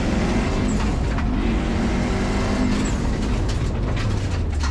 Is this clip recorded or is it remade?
recorded